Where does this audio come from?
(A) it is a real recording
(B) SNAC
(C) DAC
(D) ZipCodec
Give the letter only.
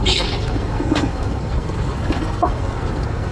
B